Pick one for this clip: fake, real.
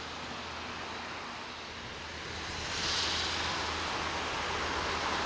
real